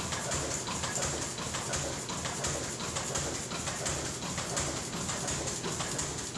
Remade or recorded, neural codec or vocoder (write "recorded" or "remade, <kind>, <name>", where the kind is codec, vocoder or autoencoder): recorded